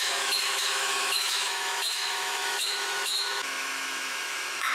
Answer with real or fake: fake